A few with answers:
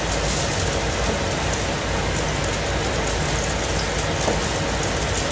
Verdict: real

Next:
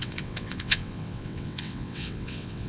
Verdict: fake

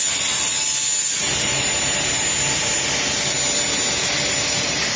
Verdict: real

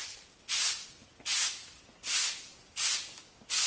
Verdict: real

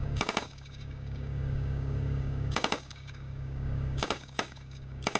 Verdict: fake